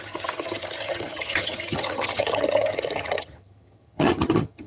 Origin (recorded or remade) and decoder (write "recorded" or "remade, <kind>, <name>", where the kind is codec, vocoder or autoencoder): remade, vocoder, HiFi-GAN